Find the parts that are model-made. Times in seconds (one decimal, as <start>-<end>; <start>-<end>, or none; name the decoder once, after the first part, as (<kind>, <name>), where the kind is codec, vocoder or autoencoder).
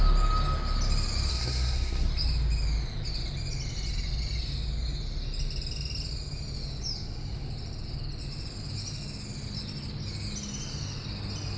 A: 1.3-2.1 (codec, SNAC)